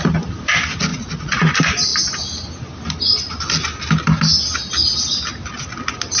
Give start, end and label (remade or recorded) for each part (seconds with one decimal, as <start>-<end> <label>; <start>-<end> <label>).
0.0-0.9 recorded; 0.9-1.5 remade; 1.5-6.2 recorded